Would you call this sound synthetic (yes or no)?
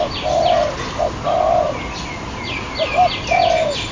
no